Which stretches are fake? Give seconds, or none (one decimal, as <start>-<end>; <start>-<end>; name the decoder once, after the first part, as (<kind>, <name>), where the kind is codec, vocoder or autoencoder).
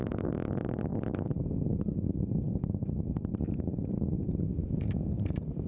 none